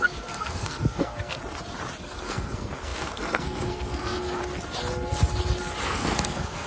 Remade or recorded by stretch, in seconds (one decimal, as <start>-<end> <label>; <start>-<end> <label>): 0.0-1.4 remade; 1.4-2.2 recorded; 2.2-4.4 remade; 4.4-5.8 recorded; 5.8-6.7 remade